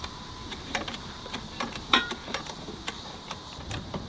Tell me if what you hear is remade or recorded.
remade